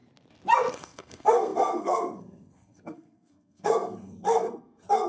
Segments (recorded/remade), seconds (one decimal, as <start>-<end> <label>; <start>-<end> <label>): 0.0-0.7 recorded; 0.7-5.1 remade